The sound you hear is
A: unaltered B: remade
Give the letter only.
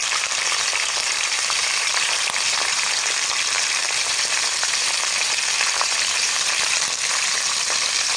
B